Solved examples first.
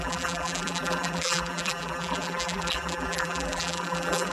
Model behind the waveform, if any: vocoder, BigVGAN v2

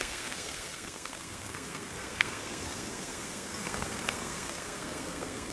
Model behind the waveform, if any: codec, SNAC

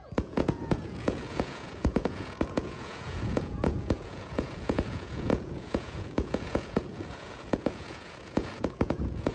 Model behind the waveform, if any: vocoder, Vocos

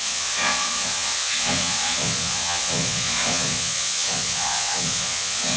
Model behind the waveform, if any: vocoder, Vocos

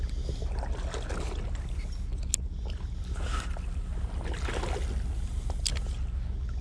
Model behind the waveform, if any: none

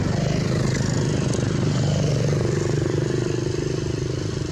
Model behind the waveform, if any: none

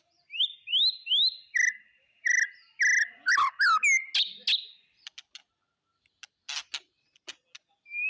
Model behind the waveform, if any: none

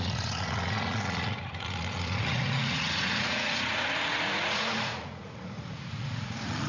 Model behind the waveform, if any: vocoder, Vocos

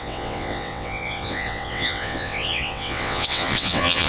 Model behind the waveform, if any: vocoder, WaveNeXt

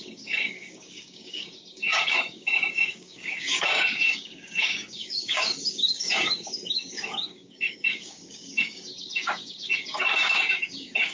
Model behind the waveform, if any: codec, DAC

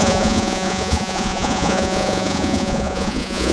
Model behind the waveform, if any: vocoder, Vocos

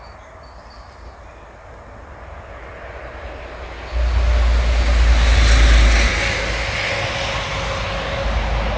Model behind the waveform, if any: none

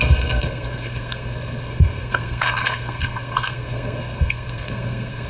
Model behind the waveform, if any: codec, SNAC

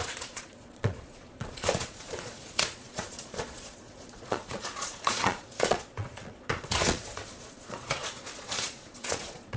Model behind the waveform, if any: vocoder, Vocos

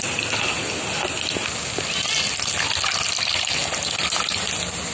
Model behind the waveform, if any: none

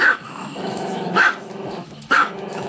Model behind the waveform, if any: autoencoder, DAC-VAE